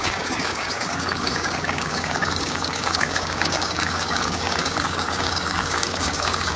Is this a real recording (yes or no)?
no